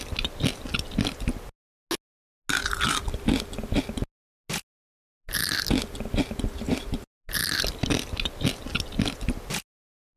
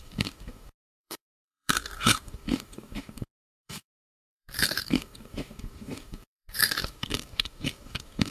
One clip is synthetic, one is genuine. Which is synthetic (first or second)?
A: second